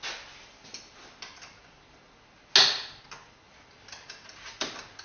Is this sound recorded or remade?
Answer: recorded